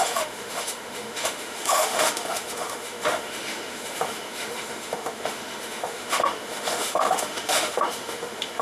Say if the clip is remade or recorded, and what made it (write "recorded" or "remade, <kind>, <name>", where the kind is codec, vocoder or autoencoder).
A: remade, autoencoder, DAC-VAE